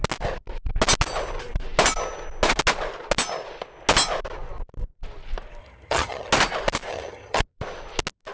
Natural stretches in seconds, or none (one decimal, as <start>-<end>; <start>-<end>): 0.0-5.6; 6.3-6.9; 7.4-8.3